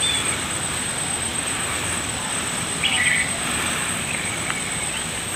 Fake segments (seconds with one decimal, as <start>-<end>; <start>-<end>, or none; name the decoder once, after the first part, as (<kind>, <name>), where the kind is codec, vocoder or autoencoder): 1.3-4.5 (vocoder, BigVGAN v2)